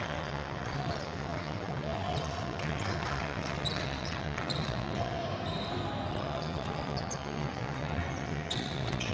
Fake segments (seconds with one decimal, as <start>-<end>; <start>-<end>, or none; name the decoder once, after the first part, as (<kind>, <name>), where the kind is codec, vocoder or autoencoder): 0.0-5.2 (vocoder, WaveNeXt); 6.1-9.1